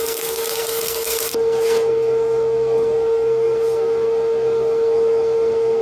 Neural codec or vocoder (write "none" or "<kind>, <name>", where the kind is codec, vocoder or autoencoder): codec, SNAC